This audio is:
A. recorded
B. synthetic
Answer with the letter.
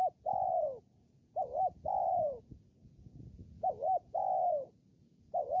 B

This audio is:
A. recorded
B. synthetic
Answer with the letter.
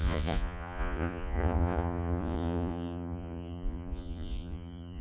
B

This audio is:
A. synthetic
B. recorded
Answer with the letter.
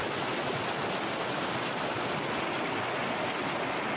B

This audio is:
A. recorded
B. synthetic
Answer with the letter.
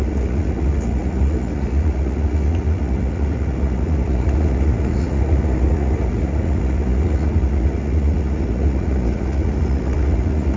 B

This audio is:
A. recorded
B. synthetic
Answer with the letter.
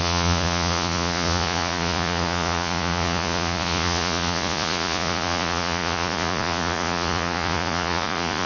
B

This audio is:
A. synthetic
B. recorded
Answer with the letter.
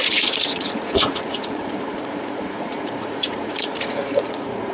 A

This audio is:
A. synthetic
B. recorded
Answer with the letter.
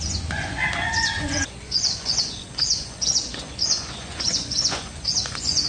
A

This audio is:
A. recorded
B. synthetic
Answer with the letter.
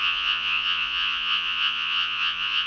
B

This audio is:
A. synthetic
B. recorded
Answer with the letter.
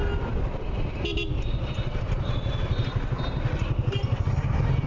B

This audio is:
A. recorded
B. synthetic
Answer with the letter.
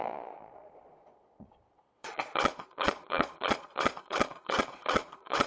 B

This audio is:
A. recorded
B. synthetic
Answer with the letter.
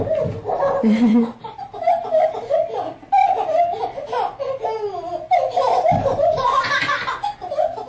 A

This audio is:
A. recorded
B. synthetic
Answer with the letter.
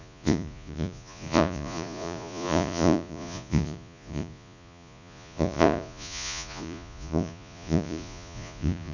B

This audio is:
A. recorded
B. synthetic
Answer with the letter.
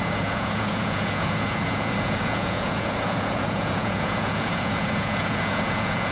B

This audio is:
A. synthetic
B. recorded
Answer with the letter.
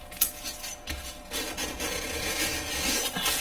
A